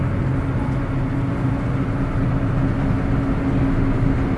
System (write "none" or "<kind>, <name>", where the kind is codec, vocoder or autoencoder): none